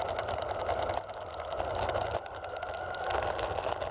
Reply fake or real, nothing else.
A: real